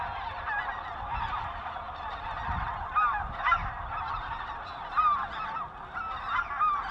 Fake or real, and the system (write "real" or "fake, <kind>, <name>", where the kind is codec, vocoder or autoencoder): real